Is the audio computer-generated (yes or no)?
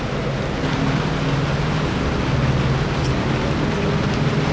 no